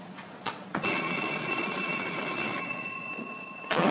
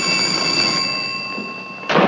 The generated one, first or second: first